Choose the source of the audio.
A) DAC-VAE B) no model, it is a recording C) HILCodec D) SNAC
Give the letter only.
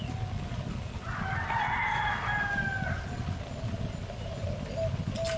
B